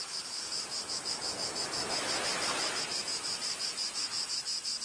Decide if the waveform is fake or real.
fake